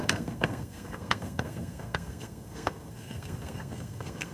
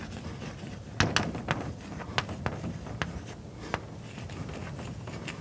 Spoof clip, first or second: first